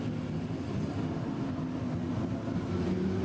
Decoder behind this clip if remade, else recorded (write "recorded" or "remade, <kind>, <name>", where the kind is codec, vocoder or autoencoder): recorded